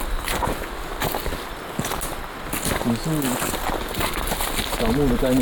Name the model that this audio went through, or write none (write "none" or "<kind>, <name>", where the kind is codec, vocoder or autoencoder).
none